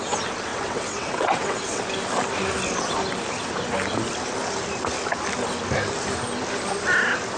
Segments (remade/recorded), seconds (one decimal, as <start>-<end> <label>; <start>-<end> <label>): 0.0-0.5 recorded; 0.5-1.8 remade; 1.8-7.4 recorded